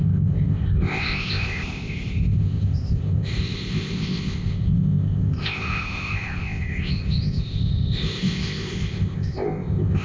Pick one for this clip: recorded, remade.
remade